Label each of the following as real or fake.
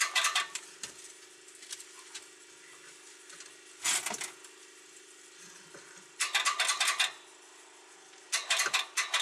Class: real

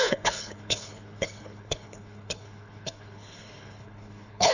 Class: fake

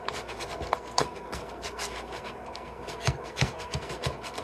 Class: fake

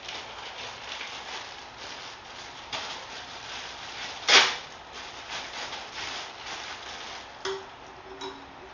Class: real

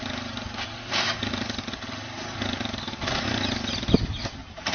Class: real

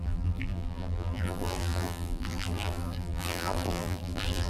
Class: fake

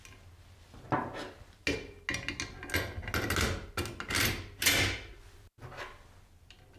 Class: real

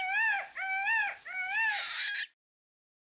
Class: real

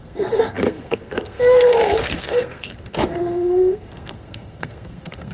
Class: fake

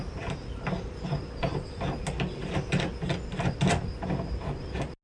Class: real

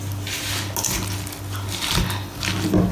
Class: real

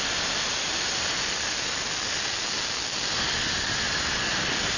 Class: real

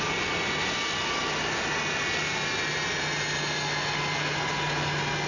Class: real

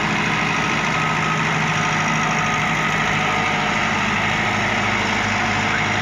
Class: real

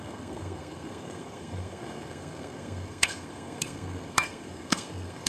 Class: fake